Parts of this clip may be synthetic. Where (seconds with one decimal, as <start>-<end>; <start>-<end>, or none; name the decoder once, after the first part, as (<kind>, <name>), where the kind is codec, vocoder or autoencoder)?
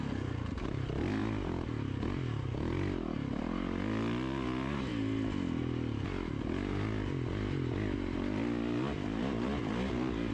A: none